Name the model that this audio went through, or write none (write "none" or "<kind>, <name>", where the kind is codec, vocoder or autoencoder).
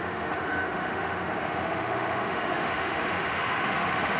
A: autoencoder, DAC-VAE